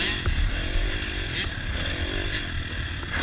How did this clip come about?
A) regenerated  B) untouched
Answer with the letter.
B